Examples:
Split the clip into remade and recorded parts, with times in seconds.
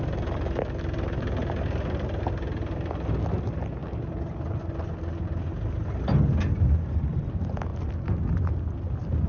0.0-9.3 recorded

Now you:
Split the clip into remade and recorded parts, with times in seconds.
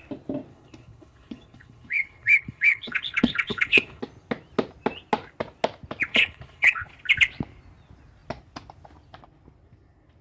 0.0-0.5 recorded; 0.5-4.0 remade; 4.0-6.1 recorded; 6.1-6.9 remade; 6.9-10.2 recorded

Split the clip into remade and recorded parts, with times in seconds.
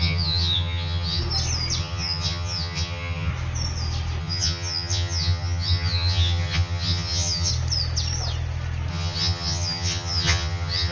0.0-1.2 remade; 1.2-1.8 recorded; 1.8-3.3 remade; 3.3-4.2 recorded; 4.2-7.5 remade; 7.5-8.9 recorded; 8.9-10.9 remade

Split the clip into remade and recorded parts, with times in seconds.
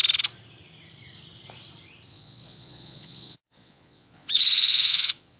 0.0-2.1 recorded; 2.1-5.4 remade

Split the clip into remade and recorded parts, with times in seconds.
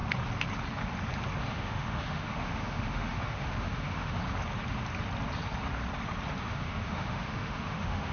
0.0-1.5 recorded; 1.5-4.2 remade; 4.2-6.4 recorded; 6.4-8.1 remade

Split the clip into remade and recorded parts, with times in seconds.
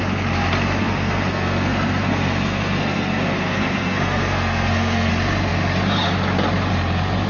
0.0-0.8 recorded; 0.8-5.1 remade; 5.1-7.3 recorded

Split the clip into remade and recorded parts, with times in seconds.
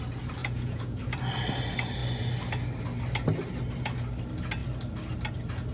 0.0-0.4 recorded; 0.4-1.0 remade; 1.0-5.7 recorded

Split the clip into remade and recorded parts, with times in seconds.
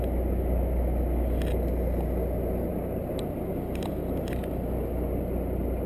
0.0-2.7 recorded; 2.7-3.2 remade; 3.2-5.9 recorded